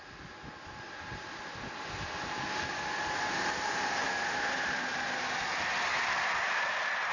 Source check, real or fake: real